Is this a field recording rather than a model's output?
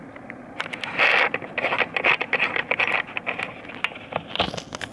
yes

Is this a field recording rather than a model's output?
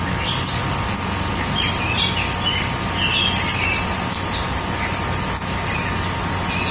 yes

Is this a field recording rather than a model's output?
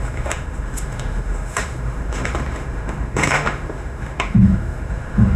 no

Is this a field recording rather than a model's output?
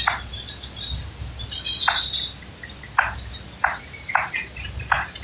yes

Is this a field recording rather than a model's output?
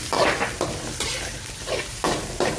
yes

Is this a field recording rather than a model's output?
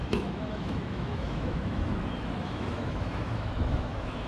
no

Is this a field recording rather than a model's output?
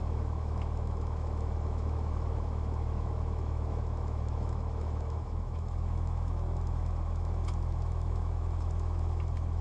no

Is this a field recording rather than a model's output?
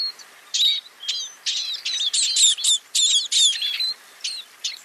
yes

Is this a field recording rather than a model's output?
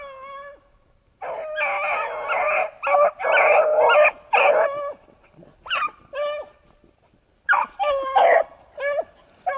yes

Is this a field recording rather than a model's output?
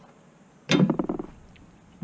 yes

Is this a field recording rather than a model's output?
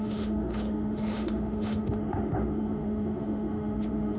no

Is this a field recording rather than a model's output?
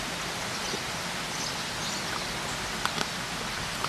yes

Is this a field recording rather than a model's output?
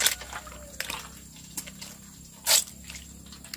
yes